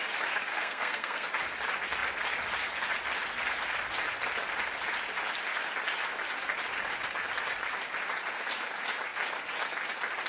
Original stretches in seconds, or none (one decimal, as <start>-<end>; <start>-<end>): 0.0-0.5; 1.3-10.3